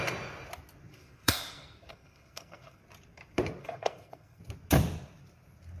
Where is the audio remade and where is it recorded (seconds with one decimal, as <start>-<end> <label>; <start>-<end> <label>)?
0.0-0.9 recorded; 0.9-2.8 remade; 2.8-3.6 recorded; 3.6-4.4 remade; 4.4-5.8 recorded